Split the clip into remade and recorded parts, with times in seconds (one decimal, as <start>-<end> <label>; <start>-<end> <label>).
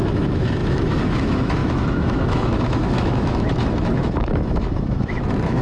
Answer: 0.0-5.6 remade